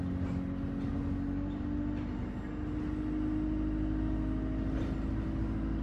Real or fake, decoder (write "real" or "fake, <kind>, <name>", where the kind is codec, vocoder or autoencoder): real